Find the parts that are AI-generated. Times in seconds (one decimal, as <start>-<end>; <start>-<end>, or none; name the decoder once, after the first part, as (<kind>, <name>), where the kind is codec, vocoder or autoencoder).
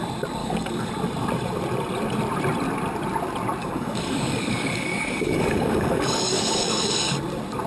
0.4-0.9 (codec, DAC); 3.6-7.0